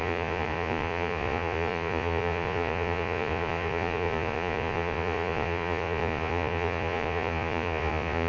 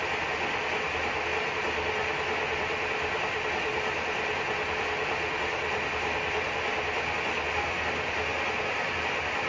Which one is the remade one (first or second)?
first